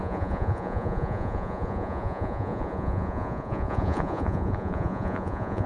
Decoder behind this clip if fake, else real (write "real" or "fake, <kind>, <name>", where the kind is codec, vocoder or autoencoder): fake, vocoder, Vocos